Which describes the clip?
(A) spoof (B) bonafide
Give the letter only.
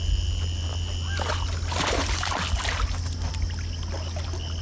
B